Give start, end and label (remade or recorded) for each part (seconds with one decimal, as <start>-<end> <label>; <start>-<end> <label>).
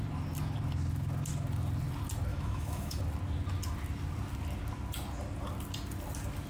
0.0-2.3 recorded; 2.3-3.0 remade; 3.0-6.5 recorded